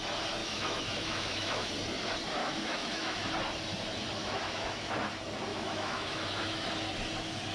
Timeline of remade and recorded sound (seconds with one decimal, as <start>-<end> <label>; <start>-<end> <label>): 0.0-0.4 recorded; 0.4-1.7 remade; 1.7-2.4 recorded; 2.4-3.3 remade; 3.3-4.2 recorded; 4.2-4.9 remade; 4.9-5.5 recorded; 5.5-6.7 remade; 6.7-7.5 recorded